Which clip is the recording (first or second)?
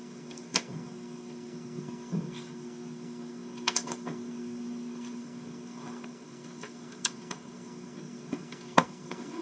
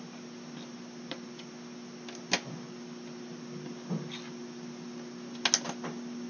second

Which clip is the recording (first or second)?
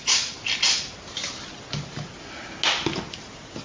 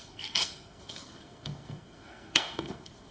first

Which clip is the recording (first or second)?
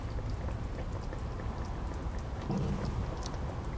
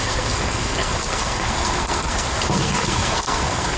first